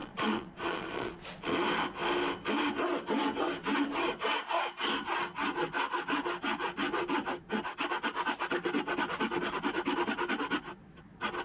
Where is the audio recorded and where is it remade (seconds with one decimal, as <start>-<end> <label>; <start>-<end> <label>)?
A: 0.0-1.4 remade; 1.4-11.4 recorded